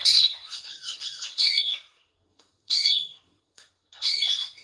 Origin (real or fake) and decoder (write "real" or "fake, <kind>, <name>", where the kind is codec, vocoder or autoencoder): fake, codec, SNAC